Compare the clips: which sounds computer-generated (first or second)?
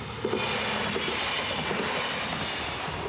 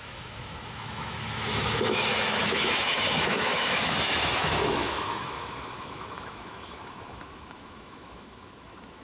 second